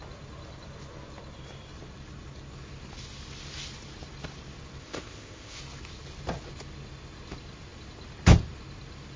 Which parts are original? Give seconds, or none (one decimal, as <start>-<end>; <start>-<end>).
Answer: 0.0-4.8; 5.6-9.2